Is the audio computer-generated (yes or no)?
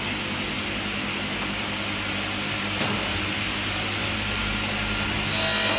no